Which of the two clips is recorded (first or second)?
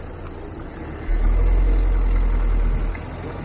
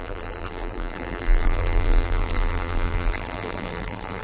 first